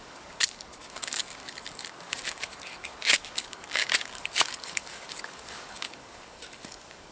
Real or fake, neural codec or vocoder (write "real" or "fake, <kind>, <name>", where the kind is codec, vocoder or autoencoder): fake, codec, DAC